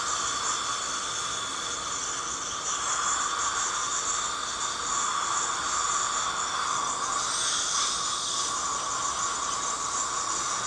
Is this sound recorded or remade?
recorded